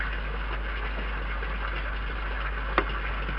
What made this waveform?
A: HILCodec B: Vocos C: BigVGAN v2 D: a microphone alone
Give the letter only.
D